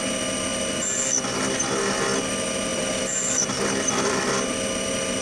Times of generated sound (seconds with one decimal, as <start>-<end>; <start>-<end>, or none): 2.7-4.3